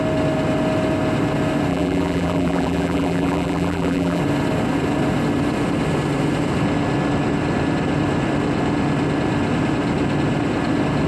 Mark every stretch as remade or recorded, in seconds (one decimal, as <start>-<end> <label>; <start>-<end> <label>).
0.0-1.7 recorded; 1.7-4.2 remade; 4.2-11.1 recorded